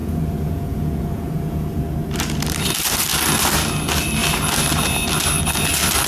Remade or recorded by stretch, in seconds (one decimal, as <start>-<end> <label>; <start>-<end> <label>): 0.0-1.8 remade; 1.8-6.1 recorded